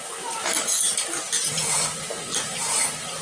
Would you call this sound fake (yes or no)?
no